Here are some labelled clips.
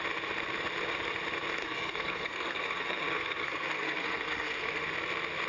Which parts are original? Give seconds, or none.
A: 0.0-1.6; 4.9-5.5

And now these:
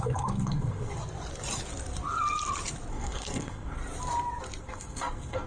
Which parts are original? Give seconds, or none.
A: 0.9-2.9; 3.8-4.6

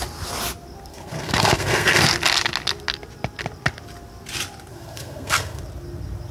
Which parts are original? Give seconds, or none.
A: 0.0-0.9; 2.0-4.7; 5.6-6.3

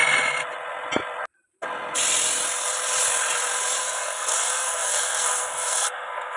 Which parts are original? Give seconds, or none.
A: 0.0-3.8

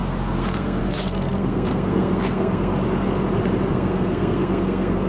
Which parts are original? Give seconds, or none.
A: 2.7-3.7

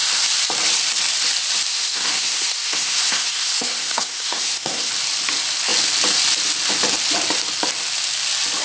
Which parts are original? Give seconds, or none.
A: 0.0-1.7; 4.9-8.6

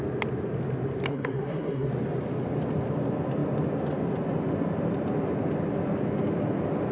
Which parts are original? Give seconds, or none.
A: 0.0-1.1; 1.9-6.9

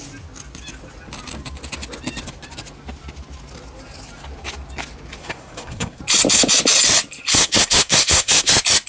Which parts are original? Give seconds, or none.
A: 0.0-5.2; 6.0-7.3; 8.5-8.9